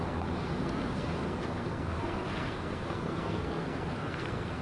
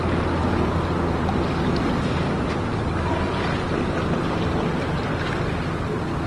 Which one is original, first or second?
second